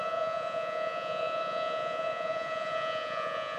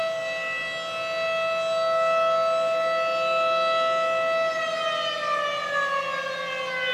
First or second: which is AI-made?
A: first